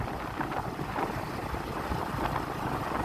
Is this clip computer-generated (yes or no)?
no